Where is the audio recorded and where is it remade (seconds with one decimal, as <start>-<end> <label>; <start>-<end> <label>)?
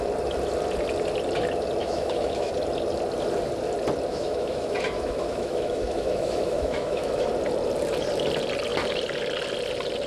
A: 0.0-1.8 recorded; 1.8-2.5 remade; 2.5-4.1 recorded; 4.1-7.3 remade; 7.3-10.1 recorded